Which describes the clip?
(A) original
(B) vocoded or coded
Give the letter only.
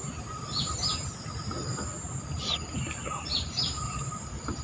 A